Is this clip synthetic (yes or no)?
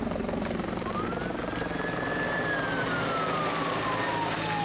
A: no